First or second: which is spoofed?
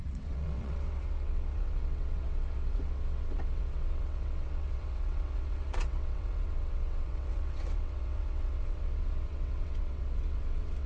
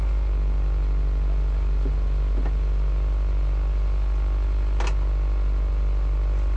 first